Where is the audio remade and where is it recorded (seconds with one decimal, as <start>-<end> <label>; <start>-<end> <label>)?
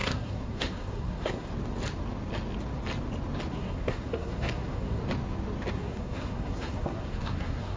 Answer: 0.0-1.5 remade; 1.5-3.5 recorded; 3.5-5.0 remade; 5.0-5.7 recorded; 5.7-7.8 remade